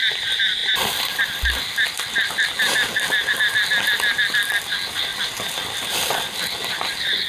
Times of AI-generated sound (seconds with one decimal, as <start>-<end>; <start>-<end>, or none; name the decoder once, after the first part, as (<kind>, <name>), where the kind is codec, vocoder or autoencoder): none